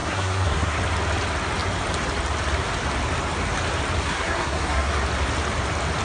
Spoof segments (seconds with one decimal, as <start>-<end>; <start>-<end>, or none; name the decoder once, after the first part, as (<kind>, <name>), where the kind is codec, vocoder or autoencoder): 0.0-0.8 (codec, SNAC); 4.0-4.9